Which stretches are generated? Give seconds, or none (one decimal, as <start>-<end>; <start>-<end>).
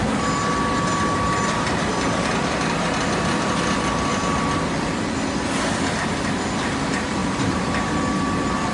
7.2-7.9